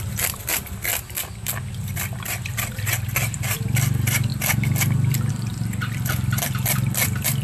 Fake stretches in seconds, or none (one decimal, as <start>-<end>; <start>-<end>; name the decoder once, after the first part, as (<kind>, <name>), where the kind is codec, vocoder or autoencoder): 0.0-0.9 (vocoder, BigVGAN v2); 1.8-7.4